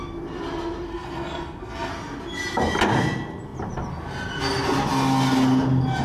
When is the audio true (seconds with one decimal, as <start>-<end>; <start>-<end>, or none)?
0.0-0.9; 1.9-6.0